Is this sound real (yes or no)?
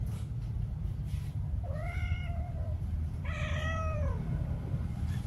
no